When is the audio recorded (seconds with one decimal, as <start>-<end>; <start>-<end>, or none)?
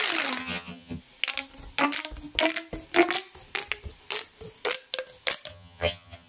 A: 0.0-0.4; 1.0-5.5